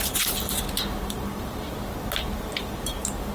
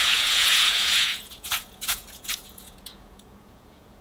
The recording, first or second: first